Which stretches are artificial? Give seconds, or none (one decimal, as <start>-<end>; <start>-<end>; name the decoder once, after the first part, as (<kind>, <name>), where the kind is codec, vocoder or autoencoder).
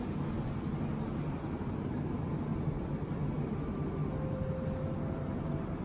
none